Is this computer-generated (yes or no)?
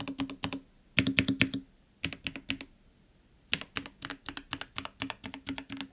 no